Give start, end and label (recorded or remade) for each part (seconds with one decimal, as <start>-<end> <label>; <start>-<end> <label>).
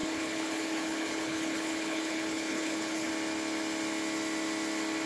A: 0.0-3.1 remade; 3.1-5.1 recorded